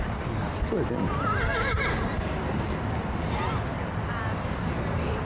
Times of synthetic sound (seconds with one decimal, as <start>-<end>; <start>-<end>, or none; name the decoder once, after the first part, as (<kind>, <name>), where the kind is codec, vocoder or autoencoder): none